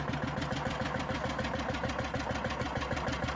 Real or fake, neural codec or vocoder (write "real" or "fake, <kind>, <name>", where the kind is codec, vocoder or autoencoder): real